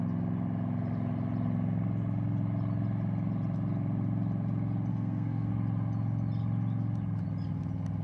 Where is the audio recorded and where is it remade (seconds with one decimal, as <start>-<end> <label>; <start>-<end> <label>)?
0.0-4.9 recorded; 4.9-5.5 remade; 5.5-8.0 recorded